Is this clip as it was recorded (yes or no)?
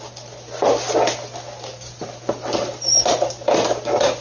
yes